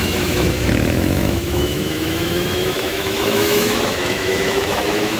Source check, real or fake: fake